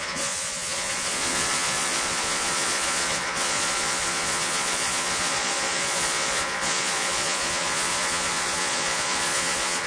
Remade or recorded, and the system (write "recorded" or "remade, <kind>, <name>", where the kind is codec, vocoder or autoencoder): remade, vocoder, Vocos